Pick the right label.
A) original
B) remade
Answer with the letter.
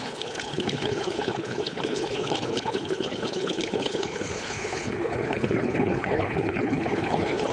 B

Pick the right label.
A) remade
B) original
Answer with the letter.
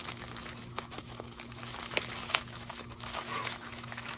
A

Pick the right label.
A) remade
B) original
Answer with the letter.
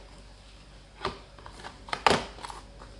B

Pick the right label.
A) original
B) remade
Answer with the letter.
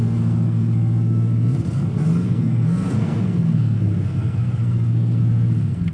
B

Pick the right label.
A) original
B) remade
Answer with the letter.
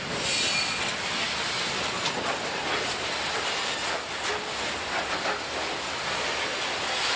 A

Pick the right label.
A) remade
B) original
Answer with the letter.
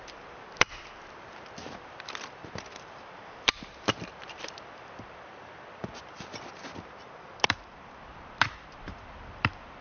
A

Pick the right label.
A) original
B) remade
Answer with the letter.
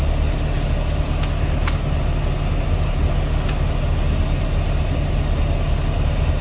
A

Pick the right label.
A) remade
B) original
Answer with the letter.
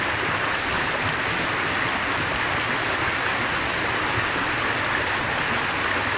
B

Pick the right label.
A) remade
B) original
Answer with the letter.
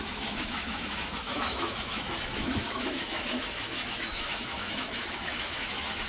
A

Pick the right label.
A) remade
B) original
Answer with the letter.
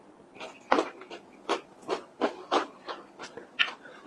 B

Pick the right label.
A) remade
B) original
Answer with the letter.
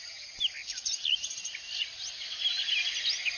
B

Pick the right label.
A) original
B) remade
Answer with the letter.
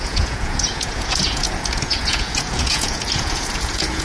B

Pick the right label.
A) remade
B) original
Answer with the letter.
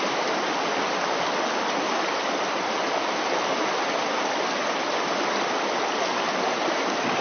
B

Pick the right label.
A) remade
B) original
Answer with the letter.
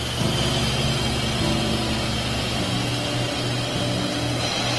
B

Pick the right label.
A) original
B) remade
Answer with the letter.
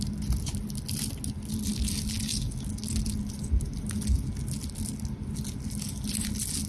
A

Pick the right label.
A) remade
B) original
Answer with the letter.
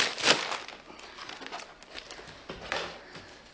B